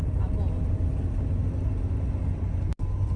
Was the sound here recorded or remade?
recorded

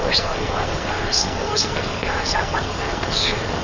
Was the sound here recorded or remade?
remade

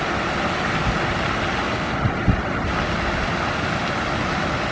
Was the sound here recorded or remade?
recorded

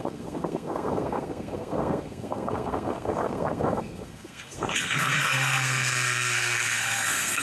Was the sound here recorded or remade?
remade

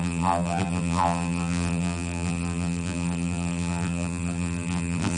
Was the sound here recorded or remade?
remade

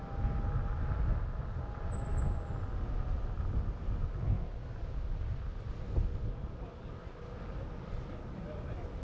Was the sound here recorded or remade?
recorded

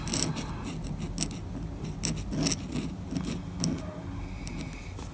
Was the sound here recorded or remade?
recorded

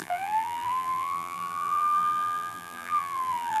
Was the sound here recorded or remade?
remade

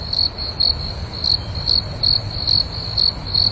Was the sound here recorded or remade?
recorded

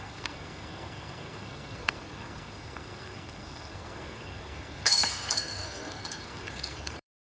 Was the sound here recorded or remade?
remade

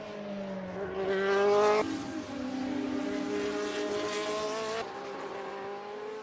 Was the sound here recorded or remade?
recorded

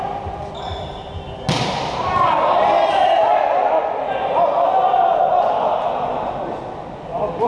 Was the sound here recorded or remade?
recorded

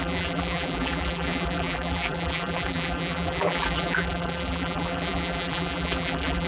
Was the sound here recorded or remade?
remade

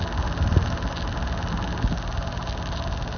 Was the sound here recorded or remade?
recorded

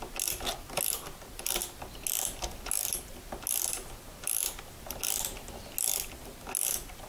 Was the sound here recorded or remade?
recorded